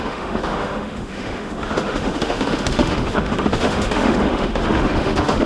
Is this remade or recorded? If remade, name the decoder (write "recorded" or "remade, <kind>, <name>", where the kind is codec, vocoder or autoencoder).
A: remade, autoencoder, DAC-VAE